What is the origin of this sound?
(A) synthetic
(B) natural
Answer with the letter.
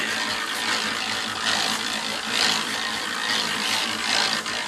B